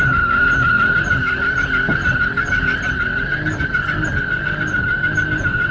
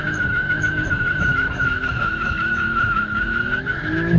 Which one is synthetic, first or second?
second